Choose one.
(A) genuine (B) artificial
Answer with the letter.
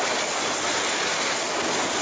A